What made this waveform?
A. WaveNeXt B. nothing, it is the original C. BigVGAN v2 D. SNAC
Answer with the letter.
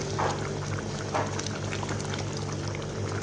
B